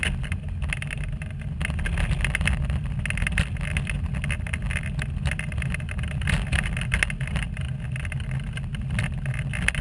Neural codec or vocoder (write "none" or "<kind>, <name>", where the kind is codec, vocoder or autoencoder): none